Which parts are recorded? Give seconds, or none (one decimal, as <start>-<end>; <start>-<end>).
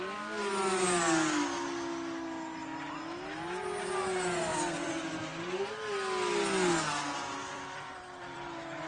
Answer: 0.0-4.5; 5.7-7.4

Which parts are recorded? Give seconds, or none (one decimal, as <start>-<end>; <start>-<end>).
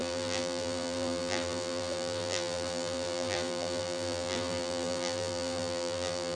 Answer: none